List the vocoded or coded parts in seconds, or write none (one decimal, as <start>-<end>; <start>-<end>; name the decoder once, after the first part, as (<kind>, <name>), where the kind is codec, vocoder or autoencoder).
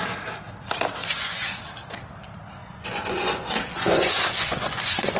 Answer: 1.0-1.6 (vocoder, Vocos); 2.6-5.2